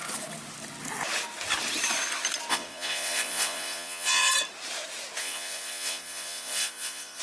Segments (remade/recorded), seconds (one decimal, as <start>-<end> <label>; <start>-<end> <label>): 0.0-2.5 recorded; 2.5-4.3 remade; 4.3-5.2 recorded; 5.2-7.2 remade